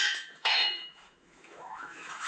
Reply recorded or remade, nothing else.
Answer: remade